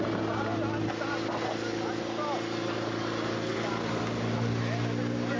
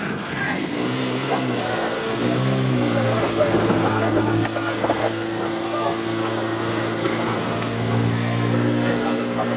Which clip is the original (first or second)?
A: first